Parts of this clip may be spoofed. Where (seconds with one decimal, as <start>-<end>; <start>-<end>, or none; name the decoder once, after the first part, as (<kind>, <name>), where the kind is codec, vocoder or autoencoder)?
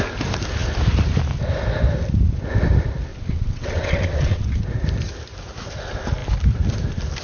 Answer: 3.1-4.6 (vocoder, WaveNeXt)